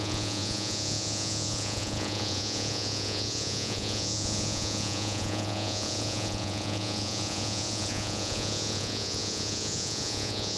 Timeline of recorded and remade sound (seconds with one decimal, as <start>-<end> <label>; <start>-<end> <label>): 0.0-10.6 remade